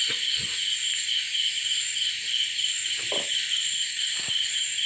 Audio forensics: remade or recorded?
recorded